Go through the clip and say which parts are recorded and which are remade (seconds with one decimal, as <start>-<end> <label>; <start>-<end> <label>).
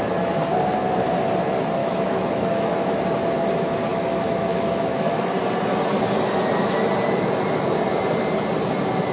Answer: 0.0-1.8 recorded; 1.8-3.0 remade; 3.0-3.9 recorded; 3.9-5.3 remade; 5.3-9.1 recorded